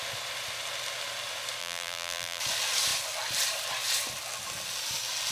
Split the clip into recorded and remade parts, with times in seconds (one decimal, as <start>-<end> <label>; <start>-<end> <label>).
0.0-1.6 recorded; 1.6-2.4 remade; 2.4-5.3 recorded